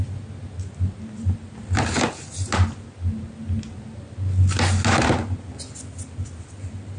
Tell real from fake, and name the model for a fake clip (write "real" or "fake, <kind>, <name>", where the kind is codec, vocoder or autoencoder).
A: real